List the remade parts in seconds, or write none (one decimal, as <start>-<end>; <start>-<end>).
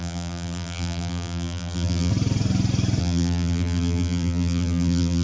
0.0-2.1; 3.0-5.2